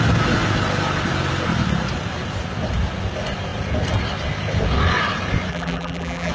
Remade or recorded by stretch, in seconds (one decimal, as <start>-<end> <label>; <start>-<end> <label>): 0.0-5.5 recorded; 5.5-6.3 remade